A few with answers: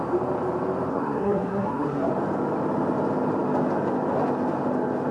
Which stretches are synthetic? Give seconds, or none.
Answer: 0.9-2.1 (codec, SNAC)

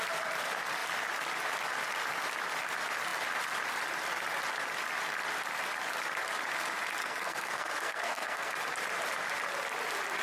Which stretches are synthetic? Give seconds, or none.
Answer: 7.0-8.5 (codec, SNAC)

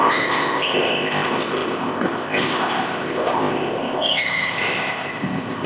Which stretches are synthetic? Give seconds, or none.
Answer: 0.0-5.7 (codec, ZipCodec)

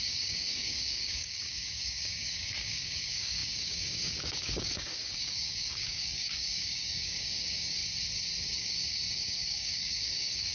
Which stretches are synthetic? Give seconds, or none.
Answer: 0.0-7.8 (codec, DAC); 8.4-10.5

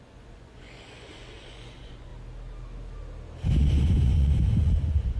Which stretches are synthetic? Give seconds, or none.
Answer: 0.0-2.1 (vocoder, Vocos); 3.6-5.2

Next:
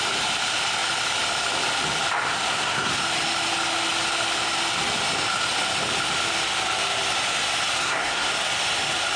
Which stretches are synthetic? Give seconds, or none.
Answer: 2.5-3.0 (codec, SNAC); 7.8-8.3

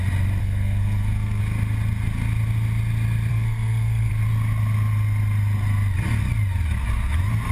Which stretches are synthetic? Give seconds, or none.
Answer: 0.4-1.4 (codec, SNAC); 3.3-4.1